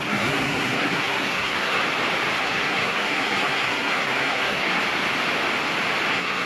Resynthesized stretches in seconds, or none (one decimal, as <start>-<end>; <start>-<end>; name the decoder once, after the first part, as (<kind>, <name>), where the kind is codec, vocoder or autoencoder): 0.0-1.8 (codec, SNAC); 2.4-4.8; 6.1-6.5